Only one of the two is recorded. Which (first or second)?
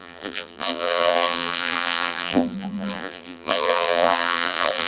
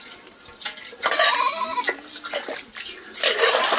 second